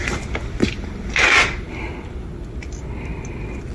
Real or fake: real